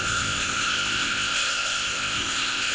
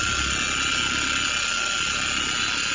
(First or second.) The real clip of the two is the second